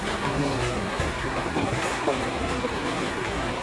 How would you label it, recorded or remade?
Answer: remade